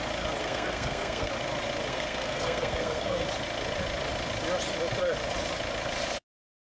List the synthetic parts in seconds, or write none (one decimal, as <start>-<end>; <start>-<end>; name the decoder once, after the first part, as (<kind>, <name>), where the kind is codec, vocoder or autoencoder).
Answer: 0.4-1.3 (codec, SNAC); 1.9-3.2